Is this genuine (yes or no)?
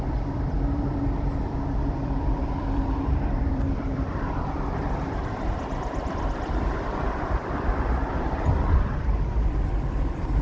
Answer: no